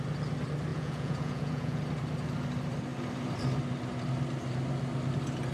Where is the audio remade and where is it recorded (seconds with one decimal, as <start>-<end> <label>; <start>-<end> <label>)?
0.0-0.7 recorded; 0.7-1.8 remade; 1.8-5.5 recorded